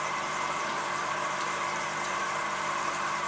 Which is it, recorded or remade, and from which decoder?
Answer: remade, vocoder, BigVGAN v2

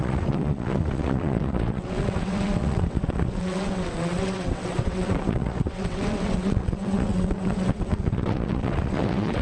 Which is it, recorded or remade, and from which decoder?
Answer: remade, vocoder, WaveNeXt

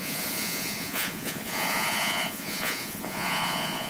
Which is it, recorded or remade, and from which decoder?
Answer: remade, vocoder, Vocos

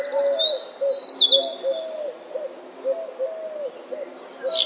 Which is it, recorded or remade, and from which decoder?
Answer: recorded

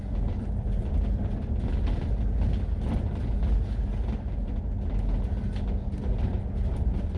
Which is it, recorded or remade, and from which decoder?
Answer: recorded